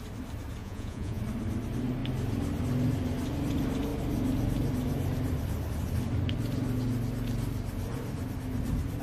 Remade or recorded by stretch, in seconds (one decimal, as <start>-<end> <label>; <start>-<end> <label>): 0.0-0.6 recorded; 0.6-1.2 remade; 1.2-9.0 recorded